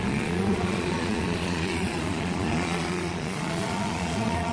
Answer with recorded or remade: remade